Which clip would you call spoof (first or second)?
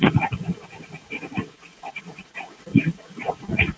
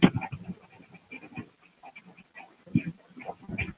first